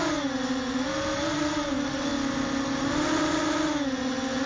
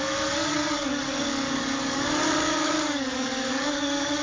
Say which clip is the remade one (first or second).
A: second